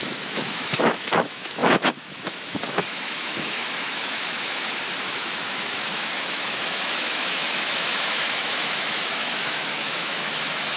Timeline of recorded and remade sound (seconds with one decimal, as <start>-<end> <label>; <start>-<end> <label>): 0.0-10.8 remade